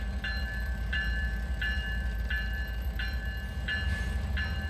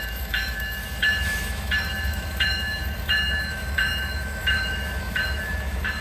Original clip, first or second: first